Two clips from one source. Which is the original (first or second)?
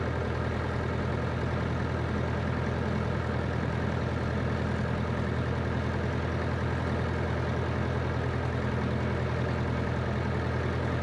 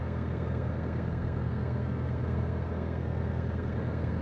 first